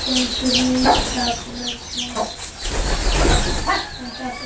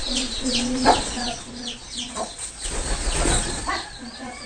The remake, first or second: second